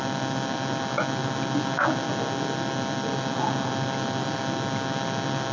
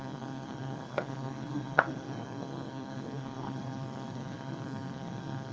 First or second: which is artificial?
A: second